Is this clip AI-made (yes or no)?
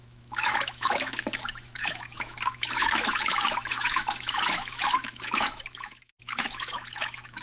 yes